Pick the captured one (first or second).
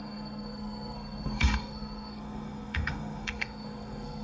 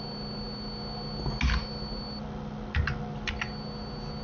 second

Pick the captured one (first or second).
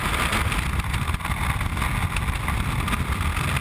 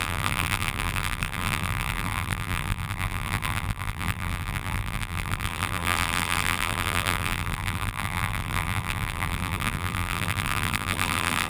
first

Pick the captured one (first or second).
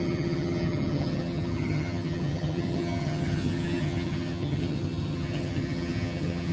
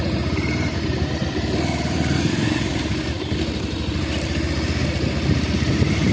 second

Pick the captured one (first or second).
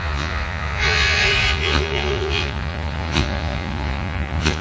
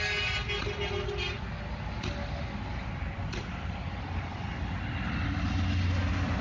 second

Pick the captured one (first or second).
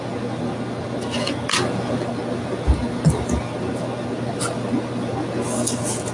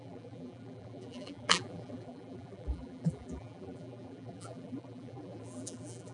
first